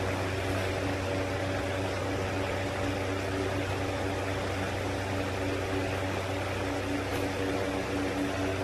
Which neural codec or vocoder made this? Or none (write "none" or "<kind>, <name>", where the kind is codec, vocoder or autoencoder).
none